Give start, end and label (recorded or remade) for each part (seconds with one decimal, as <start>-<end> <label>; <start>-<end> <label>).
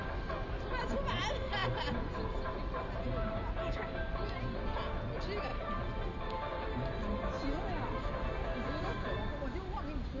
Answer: 0.0-10.2 recorded